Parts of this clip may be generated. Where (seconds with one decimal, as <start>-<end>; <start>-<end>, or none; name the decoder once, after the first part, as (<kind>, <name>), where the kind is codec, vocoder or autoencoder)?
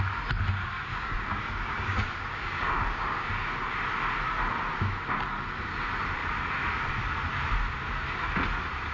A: 0.9-3.5 (codec, DAC)